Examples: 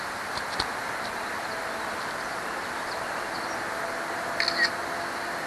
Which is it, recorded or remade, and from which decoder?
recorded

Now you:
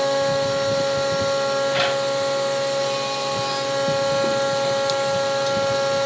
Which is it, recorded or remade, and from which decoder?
recorded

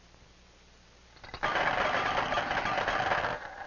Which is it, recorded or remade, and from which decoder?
recorded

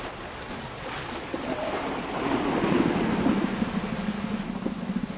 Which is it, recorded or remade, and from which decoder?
recorded